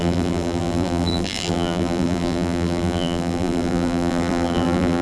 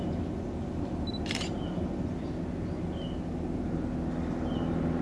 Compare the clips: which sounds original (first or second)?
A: second